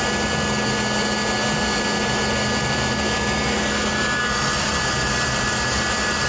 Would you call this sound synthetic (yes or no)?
no